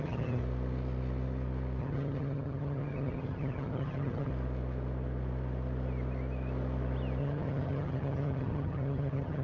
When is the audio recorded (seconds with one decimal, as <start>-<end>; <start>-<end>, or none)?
0.4-1.8; 4.3-7.2